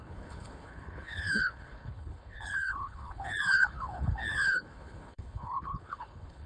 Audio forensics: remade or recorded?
remade